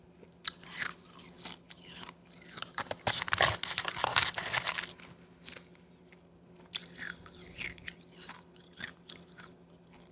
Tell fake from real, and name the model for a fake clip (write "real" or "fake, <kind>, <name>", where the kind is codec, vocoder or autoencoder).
real